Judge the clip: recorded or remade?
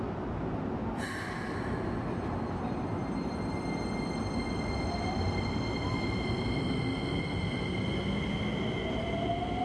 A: recorded